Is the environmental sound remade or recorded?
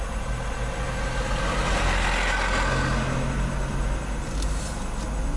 recorded